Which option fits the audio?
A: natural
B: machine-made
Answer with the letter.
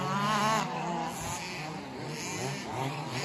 A